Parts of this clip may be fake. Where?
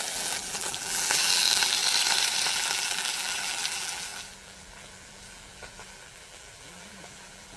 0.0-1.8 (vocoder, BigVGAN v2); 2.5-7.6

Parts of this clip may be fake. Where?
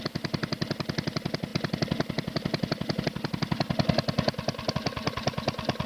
none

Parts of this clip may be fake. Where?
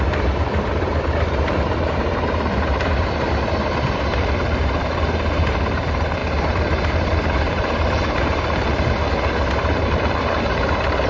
0.0-11.1 (vocoder, BigVGAN v2)